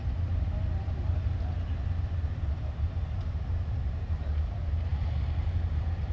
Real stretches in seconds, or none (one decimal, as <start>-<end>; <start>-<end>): 0.0-3.7; 4.9-5.6